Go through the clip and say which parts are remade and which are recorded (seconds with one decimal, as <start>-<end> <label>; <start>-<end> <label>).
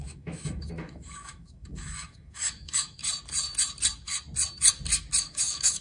0.0-3.0 remade; 3.0-5.2 recorded; 5.2-5.8 remade